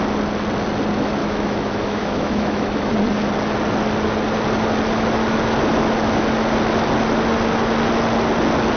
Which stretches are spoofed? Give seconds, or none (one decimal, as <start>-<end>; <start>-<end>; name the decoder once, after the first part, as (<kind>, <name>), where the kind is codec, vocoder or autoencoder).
1.2-2.9 (autoencoder, DAC-VAE)